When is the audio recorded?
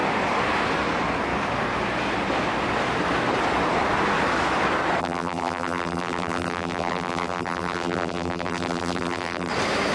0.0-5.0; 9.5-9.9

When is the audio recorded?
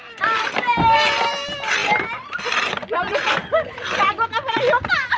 0.0-5.2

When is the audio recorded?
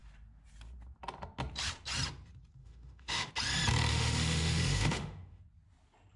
0.0-2.6; 3.3-3.9; 5.4-6.2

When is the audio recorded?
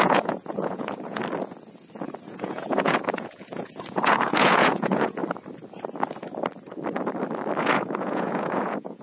1.2-2.3; 5.2-7.6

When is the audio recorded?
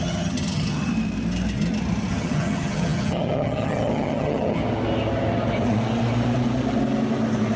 0.9-2.1; 4.6-7.6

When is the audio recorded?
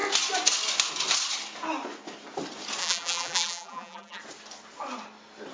0.0-2.8; 4.2-5.5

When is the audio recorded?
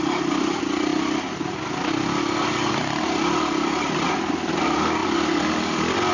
0.0-6.1